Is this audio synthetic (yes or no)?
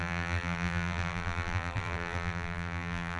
yes